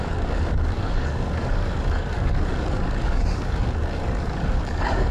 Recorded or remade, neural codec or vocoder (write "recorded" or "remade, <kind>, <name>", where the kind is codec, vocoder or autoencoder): remade, codec, DAC